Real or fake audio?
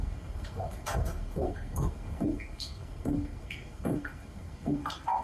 fake